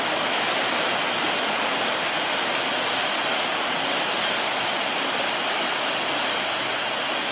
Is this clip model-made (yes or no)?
no